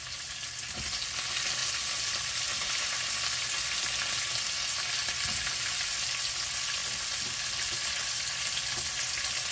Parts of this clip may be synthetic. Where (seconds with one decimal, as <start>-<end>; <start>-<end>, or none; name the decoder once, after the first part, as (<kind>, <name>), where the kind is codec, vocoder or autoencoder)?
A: none